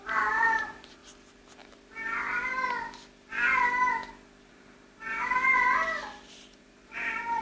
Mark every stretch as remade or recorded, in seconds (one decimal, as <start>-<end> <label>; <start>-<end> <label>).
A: 0.0-1.0 remade; 1.0-4.5 recorded; 4.5-5.4 remade; 5.4-6.6 recorded; 6.6-7.4 remade